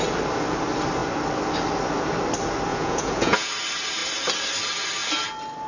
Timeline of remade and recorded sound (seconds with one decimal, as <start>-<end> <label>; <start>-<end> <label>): 0.0-2.7 recorded; 2.7-3.5 remade; 3.5-5.7 recorded